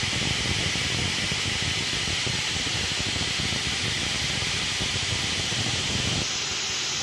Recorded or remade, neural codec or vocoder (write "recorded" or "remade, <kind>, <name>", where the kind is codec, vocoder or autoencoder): recorded